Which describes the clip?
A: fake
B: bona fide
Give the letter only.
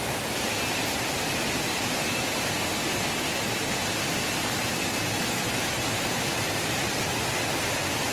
B